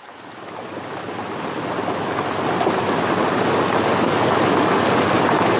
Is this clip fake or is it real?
real